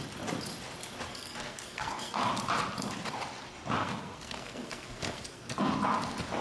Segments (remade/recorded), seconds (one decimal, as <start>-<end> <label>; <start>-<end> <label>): 0.0-1.1 recorded; 1.1-2.3 remade; 2.3-3.8 recorded; 3.8-5.7 remade; 5.7-6.4 recorded